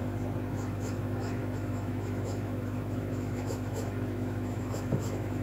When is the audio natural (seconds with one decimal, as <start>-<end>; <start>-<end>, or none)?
0.0-0.5